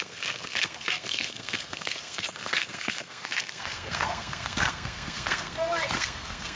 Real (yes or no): no